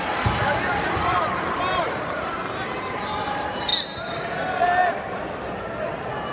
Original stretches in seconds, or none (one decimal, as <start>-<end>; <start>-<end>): 2.4-3.2; 3.7-5.8